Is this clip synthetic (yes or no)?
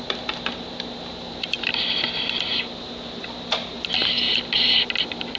no